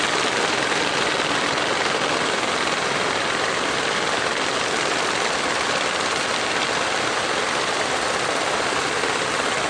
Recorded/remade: recorded